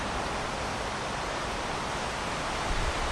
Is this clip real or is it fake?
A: real